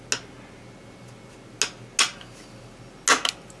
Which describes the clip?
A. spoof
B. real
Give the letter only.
B